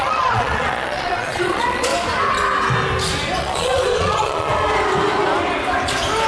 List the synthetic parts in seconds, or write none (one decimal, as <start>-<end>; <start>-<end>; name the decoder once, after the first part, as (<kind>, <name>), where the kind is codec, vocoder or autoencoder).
0.0-1.9 (vocoder, Vocos); 3.4-4.5